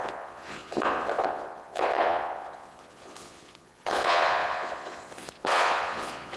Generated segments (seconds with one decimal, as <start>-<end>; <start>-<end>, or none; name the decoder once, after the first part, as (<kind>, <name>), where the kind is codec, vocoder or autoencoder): 0.0-6.4 (vocoder, Vocos)